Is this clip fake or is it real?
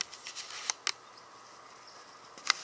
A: real